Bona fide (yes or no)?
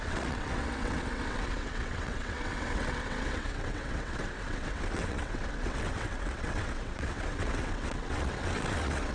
no